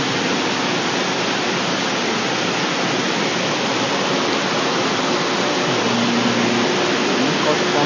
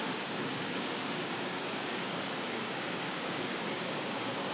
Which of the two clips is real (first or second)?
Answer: first